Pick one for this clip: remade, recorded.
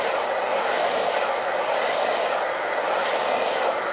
recorded